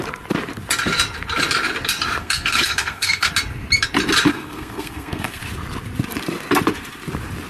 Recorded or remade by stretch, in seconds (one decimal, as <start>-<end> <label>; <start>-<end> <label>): 0.0-2.2 recorded; 2.2-3.3 remade; 3.3-4.3 recorded; 4.3-5.4 remade; 5.4-7.5 recorded